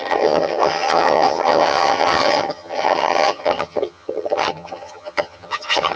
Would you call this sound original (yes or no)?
no